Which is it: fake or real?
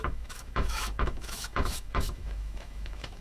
fake